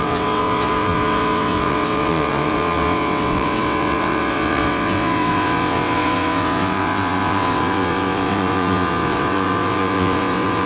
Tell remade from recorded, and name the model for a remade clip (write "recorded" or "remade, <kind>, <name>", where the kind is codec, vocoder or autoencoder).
remade, vocoder, WaveNeXt